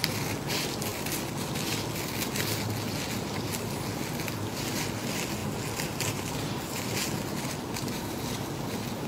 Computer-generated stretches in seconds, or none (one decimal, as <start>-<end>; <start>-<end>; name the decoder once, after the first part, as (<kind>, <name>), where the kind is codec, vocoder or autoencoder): none